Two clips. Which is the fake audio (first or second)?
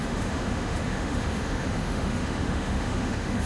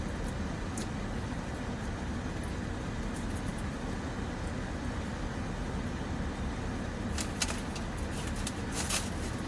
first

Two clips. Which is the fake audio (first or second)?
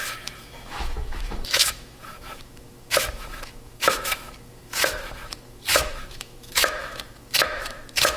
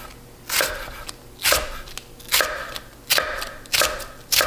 first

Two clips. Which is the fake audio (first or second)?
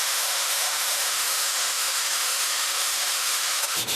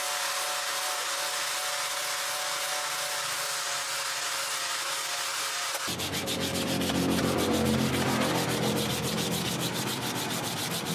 first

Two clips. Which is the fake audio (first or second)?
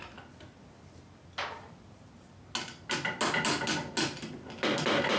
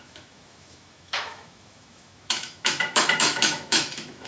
second